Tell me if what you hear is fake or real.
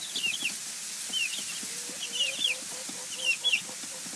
real